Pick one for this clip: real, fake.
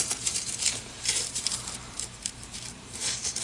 fake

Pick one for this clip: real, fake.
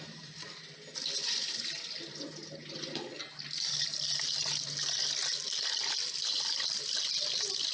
real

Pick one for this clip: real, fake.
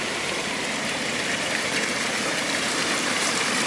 fake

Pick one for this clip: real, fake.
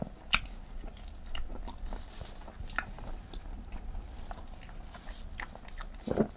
real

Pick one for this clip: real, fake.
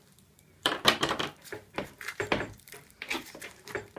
fake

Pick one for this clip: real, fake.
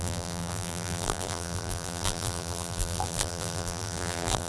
fake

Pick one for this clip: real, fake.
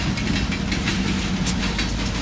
real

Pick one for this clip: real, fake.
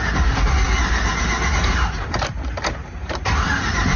fake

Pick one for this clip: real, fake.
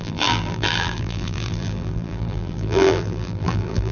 fake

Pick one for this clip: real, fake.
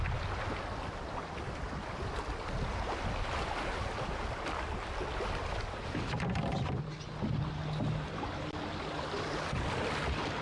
real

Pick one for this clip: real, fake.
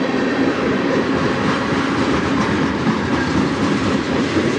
fake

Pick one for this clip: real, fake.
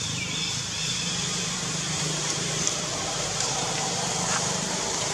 fake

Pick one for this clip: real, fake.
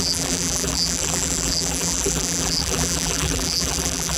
fake